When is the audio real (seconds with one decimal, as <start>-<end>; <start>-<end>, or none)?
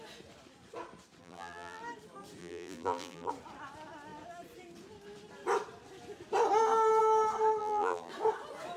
0.0-1.2; 1.8-2.4; 3.3-7.6; 8.1-8.8